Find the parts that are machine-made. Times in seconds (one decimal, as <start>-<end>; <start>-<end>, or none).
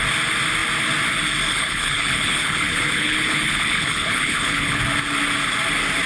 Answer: 1.5-4.8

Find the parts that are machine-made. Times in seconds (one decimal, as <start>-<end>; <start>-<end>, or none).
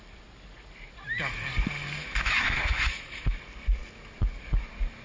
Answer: 2.0-3.4